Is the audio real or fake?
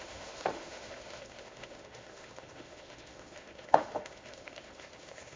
fake